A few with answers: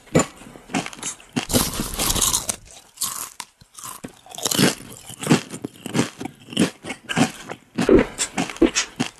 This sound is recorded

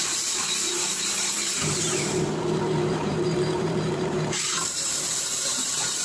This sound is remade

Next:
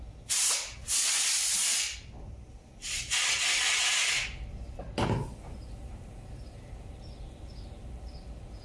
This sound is remade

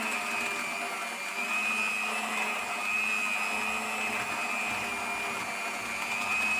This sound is recorded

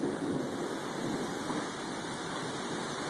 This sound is recorded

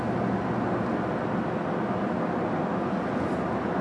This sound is recorded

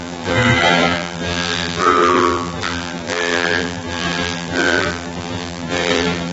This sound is remade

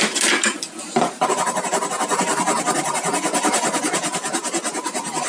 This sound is recorded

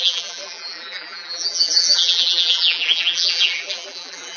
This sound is remade